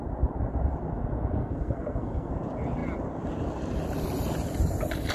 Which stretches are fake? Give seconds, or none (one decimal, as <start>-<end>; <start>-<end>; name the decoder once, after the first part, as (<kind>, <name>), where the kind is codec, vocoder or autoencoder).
1.4-2.3 (codec, SNAC)